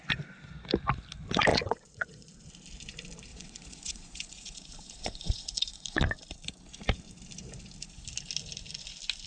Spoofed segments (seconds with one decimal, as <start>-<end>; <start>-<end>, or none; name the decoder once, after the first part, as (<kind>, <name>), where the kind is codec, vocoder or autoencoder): 1.5-2.3 (vocoder, Vocos); 3.3-6.0